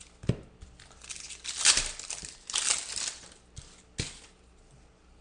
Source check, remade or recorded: recorded